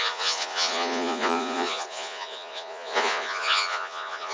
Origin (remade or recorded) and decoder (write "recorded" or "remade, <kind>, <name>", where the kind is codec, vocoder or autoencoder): remade, vocoder, Vocos